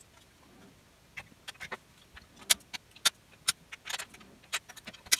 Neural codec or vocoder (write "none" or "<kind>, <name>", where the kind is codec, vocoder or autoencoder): none